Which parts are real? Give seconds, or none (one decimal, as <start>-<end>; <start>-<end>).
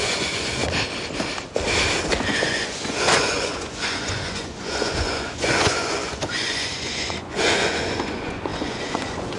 0.6-2.3